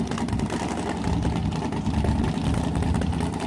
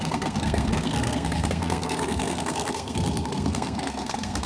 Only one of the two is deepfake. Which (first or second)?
second